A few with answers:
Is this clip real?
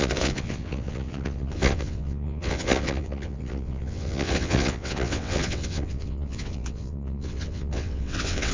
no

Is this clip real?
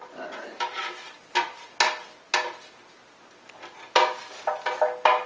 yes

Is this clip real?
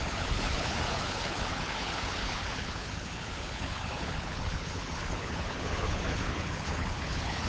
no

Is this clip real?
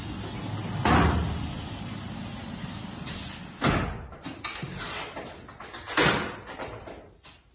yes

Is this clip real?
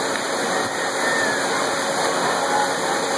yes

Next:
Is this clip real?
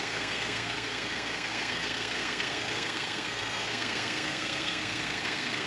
no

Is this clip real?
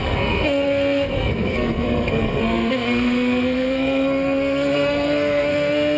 no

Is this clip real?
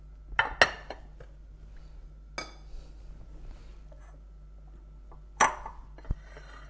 yes